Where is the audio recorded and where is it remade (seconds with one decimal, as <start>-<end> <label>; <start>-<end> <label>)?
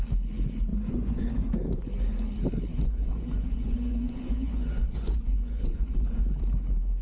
0.0-0.7 recorded; 0.7-1.3 remade; 1.3-2.7 recorded; 2.7-6.4 remade; 6.4-7.0 recorded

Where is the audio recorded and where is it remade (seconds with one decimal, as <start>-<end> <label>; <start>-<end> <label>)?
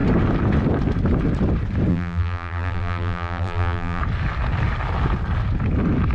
0.0-1.9 recorded; 1.9-4.0 remade; 4.0-6.1 recorded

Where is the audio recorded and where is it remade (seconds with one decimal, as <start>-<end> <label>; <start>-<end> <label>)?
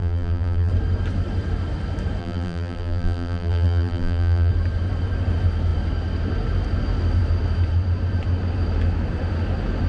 0.0-0.7 remade; 0.7-2.2 recorded; 2.2-4.5 remade; 4.5-9.9 recorded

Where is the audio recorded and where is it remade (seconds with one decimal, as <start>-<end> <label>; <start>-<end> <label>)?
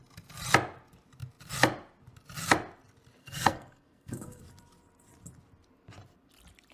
0.0-3.2 recorded; 3.2-4.4 remade; 4.4-6.7 recorded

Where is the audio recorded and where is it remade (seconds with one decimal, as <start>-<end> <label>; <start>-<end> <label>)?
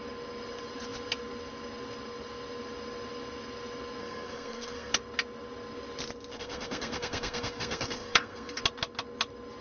0.0-4.0 recorded; 4.0-4.9 remade; 4.9-6.3 recorded; 6.3-8.6 remade; 8.6-9.6 recorded